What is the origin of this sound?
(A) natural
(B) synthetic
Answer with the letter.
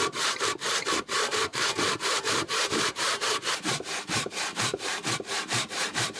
B